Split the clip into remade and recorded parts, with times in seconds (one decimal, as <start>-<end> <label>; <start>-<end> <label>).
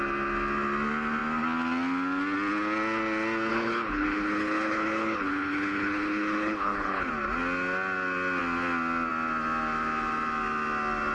0.0-3.5 recorded; 3.5-7.1 remade; 7.1-11.1 recorded